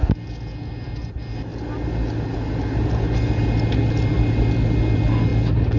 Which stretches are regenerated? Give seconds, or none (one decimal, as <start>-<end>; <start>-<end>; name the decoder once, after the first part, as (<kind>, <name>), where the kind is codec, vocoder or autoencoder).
none